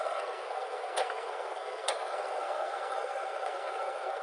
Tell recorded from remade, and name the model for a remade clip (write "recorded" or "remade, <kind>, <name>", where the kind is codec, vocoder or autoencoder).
remade, codec, SNAC